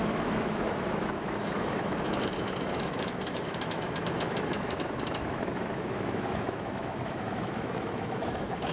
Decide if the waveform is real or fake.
fake